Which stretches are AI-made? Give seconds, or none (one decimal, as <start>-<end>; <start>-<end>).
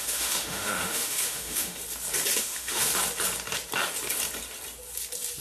0.0-1.8; 2.4-2.9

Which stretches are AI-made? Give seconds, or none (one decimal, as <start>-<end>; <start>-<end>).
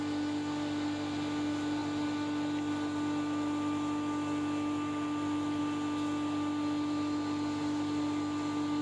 none